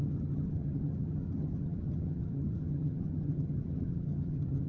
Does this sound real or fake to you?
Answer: fake